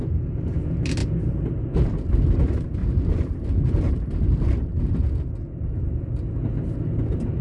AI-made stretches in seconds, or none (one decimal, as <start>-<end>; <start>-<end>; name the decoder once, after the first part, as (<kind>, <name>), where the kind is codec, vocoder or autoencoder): 2.8-4.8 (vocoder, BigVGAN v2)